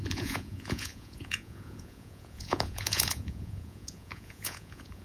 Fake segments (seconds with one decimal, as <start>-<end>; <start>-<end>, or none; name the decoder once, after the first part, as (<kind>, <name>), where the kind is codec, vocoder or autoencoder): 0.0-5.0 (vocoder, Vocos)

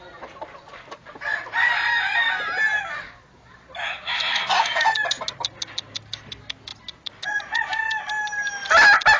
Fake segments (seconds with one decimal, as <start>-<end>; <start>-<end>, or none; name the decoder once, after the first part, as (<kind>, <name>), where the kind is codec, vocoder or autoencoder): none

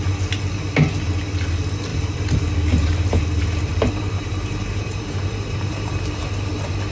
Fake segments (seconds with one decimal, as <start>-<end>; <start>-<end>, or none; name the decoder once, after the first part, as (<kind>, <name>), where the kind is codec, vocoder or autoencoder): 1.9-6.0 (vocoder, BigVGAN v2)

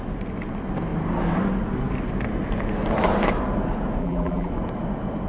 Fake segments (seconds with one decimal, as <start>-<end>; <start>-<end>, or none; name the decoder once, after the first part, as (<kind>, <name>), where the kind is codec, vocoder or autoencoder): 4.0-4.5 (vocoder, BigVGAN v2)

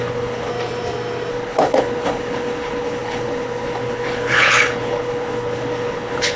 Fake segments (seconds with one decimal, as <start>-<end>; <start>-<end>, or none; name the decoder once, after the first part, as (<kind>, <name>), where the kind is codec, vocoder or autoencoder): 0.0-0.5 (codec, HILCodec); 1.3-6.4